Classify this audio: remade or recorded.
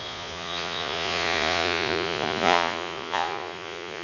remade